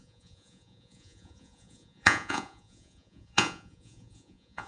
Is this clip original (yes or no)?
no